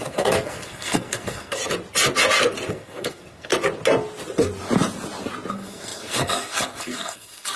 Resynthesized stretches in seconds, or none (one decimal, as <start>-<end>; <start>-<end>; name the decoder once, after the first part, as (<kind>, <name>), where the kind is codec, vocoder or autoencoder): 0.0-1.6 (codec, SNAC); 2.7-3.5; 5.5-7.6

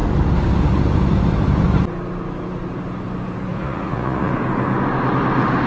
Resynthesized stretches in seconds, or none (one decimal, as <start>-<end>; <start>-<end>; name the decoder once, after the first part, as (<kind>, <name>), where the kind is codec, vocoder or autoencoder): 3.5-4.3 (vocoder, Vocos)

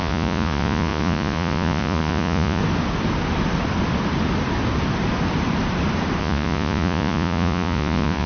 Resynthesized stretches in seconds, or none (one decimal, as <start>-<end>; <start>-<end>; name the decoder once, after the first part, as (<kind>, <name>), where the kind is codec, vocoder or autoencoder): 0.0-2.6 (vocoder, Vocos); 6.2-8.3

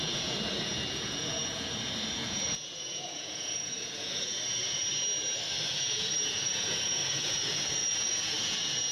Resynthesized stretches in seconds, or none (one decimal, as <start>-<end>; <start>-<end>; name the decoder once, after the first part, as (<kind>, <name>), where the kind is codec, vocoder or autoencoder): 0.0-4.8 (vocoder, Vocos); 5.7-8.9

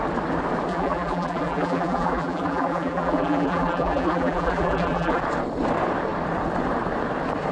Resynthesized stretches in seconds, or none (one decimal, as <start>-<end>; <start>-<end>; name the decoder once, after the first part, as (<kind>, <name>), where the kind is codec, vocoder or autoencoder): 0.7-5.2 (vocoder, BigVGAN v2)

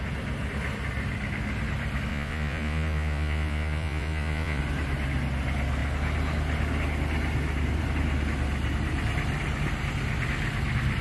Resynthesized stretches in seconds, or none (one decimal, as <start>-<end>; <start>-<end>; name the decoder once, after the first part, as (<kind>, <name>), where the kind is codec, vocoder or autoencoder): 2.1-4.6 (vocoder, Vocos)